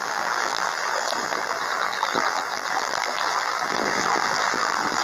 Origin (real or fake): fake